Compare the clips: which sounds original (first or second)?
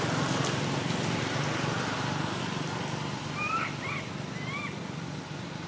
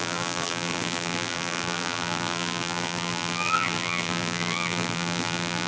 first